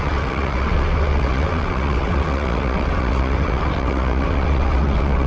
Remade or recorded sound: remade